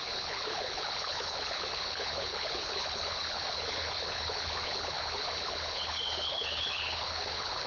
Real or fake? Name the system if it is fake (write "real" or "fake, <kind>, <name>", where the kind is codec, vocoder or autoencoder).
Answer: fake, codec, HILCodec